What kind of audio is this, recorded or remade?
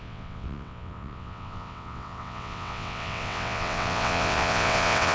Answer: remade